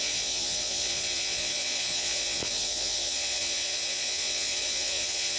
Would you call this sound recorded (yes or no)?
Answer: no